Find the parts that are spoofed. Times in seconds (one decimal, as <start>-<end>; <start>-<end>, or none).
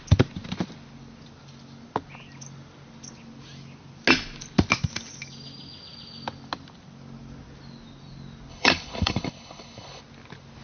8.5-10.0